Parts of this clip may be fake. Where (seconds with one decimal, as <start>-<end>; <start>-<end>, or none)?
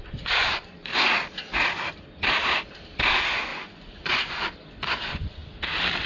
0.0-0.9; 3.1-5.4